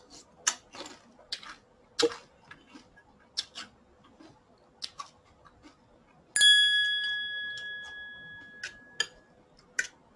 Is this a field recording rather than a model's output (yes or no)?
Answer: yes